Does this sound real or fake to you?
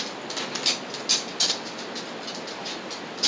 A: real